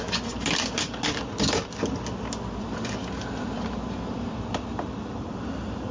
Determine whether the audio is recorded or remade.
recorded